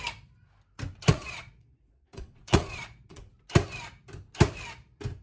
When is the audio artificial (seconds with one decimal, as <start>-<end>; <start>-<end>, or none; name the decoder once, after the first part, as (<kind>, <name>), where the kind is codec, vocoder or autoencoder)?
1.1-3.2 (vocoder, Vocos)